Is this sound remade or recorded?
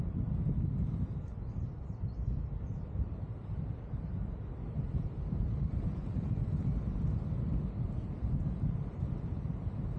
recorded